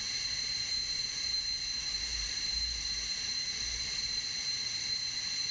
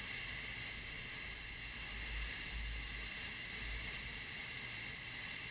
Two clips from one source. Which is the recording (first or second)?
second